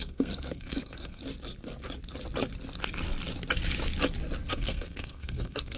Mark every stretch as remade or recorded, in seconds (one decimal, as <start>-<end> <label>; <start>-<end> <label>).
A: 0.0-1.2 remade; 1.2-4.5 recorded; 4.5-5.8 remade